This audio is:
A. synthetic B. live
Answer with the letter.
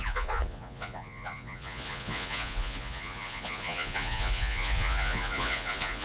A